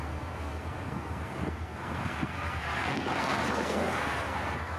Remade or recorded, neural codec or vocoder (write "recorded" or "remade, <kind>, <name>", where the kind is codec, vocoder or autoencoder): remade, codec, SNAC